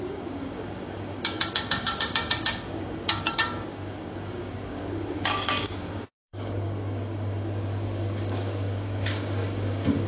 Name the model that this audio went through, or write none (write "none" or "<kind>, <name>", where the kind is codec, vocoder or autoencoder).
codec, DAC